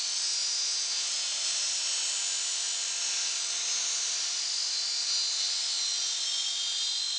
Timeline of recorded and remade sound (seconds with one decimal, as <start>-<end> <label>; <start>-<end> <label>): 0.0-7.2 recorded